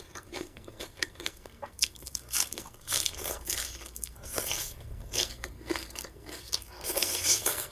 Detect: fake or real fake